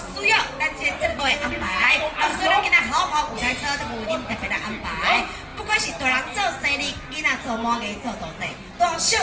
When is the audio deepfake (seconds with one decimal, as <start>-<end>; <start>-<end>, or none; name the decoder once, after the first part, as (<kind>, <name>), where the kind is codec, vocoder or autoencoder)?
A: 1.1-1.9 (codec, SNAC)